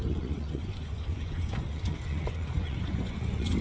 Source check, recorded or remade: remade